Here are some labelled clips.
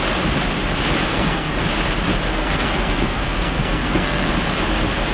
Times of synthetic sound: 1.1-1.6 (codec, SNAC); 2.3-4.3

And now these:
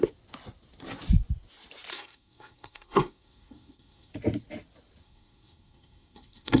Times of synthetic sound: 1.9-4.1 (codec, SNAC); 5.0-6.6